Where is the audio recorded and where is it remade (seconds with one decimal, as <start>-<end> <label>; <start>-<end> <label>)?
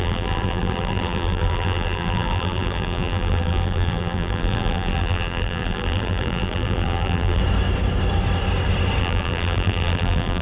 0.0-7.4 remade; 7.4-9.0 recorded; 9.0-10.4 remade